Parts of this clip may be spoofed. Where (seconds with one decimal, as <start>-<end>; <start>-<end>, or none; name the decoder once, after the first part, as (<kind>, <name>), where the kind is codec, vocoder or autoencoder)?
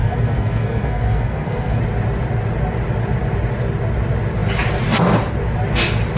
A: 0.0-1.8 (codec, SNAC)